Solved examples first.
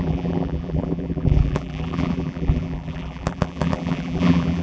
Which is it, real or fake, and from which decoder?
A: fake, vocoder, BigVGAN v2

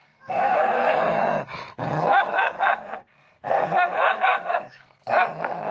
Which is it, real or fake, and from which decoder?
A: fake, codec, SNAC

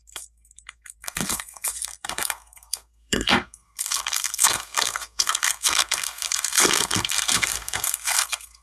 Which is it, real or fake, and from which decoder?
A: fake, codec, SNAC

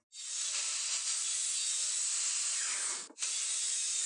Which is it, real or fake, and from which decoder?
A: real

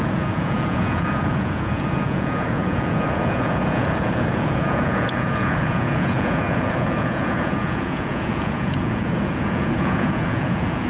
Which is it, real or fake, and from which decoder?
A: fake, vocoder, Vocos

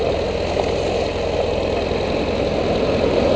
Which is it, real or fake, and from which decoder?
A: real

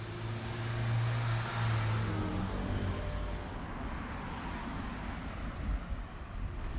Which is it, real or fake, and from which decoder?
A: real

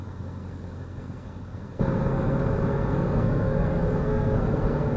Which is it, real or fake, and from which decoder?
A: fake, codec, SNAC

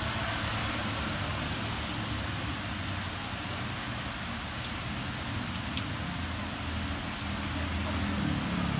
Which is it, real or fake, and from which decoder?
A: real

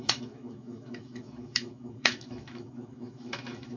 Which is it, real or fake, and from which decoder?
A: fake, autoencoder, DAC-VAE